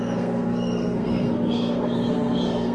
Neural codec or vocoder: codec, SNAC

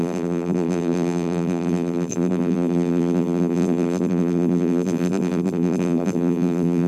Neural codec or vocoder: vocoder, BigVGAN v2